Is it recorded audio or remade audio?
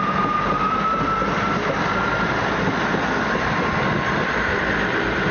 remade